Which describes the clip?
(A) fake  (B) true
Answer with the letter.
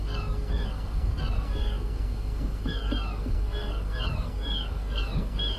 A